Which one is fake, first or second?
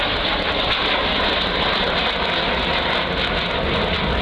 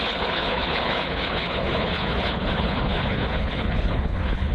second